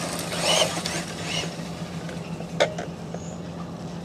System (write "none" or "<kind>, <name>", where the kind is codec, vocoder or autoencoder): none